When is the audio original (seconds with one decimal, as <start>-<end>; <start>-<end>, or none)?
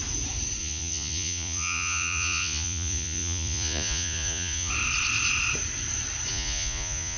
0.0-0.6; 4.7-6.3